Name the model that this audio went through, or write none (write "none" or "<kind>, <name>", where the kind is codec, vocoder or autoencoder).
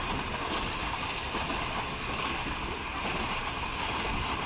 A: none